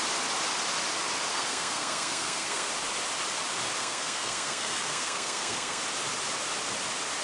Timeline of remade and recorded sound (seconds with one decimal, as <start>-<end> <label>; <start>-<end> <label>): 0.0-1.3 recorded; 1.3-2.7 remade; 2.7-3.8 recorded; 3.8-5.8 remade; 5.8-7.2 recorded